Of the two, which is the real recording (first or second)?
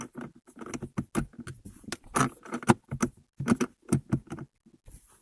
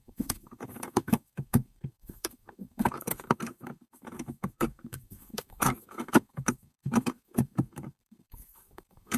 first